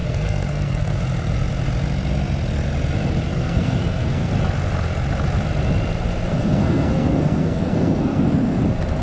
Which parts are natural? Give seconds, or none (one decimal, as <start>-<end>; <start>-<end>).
1.0-3.3; 4.3-6.3; 8.6-9.0